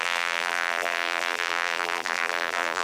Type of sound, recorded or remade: remade